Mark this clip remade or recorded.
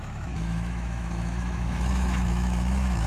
remade